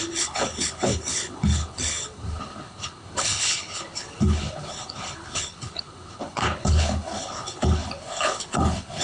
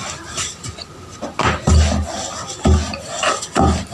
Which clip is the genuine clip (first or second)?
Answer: second